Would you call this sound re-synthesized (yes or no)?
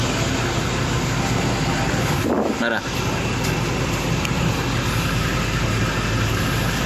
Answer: no